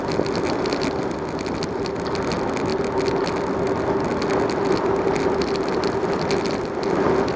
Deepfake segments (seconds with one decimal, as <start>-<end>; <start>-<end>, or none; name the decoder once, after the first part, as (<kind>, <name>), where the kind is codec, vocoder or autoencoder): none